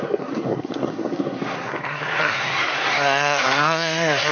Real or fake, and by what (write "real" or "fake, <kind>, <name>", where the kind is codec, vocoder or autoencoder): fake, codec, SNAC